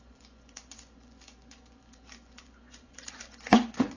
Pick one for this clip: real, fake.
fake